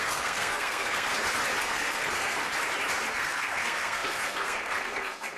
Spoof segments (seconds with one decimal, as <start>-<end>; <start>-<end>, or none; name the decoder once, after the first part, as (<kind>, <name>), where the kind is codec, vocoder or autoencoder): 0.0-1.1 (codec, SNAC); 1.6-2.5; 3.1-5.4